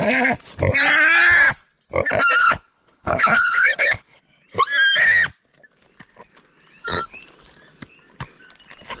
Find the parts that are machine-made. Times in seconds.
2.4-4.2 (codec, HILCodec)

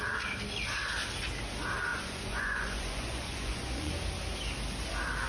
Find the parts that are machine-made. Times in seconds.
1.9-3.9 (vocoder, Vocos)

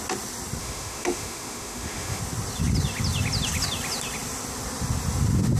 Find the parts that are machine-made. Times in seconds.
0.6-2.2 (autoencoder, DAC-VAE)

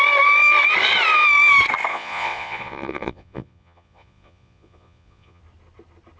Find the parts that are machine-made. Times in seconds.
1.9-5.4 (vocoder, Vocos)

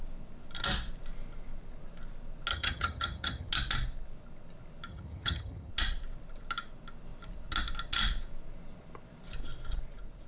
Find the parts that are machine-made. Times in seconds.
2.5-3.5 (vocoder, HiFi-GAN); 4.9-5.7

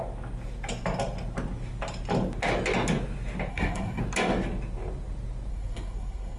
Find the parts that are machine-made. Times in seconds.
3.5-4.0 (codec, SNAC); 5.5-6.4

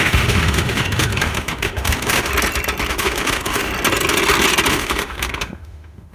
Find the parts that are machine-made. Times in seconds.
0.0-2.3 (autoencoder, DAC-VAE); 2.9-3.7; 4.7-6.1